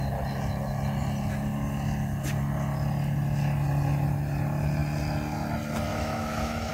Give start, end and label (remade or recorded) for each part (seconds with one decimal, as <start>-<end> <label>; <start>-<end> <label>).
0.0-5.9 recorded; 5.9-6.7 remade